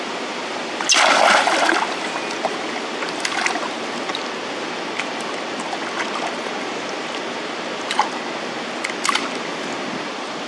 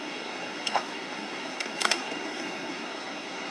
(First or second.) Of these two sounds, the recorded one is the first